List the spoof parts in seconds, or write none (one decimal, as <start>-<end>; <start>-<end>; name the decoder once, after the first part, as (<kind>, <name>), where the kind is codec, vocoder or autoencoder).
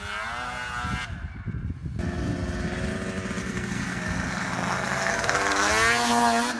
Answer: 3.4-5.7 (codec, SNAC)